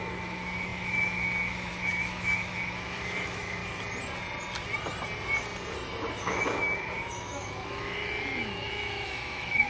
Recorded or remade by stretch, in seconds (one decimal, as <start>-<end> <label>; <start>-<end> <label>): 0.0-3.6 remade; 3.6-6.1 recorded; 6.1-9.7 remade